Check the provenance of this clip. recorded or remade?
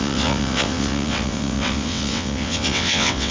remade